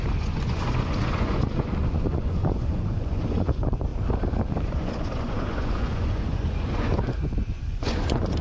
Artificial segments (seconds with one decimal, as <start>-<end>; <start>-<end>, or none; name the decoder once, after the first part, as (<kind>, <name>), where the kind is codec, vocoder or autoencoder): 0.0-3.9 (vocoder, Vocos); 4.6-8.4